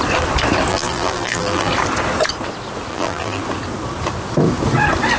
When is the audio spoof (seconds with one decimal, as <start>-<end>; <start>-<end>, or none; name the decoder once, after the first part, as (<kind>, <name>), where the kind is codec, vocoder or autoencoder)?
0.7-1.7 (vocoder, BigVGAN v2); 2.9-3.4